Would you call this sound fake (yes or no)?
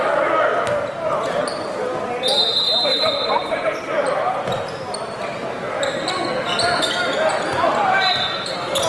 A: no